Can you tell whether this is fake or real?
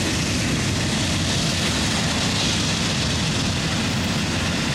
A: real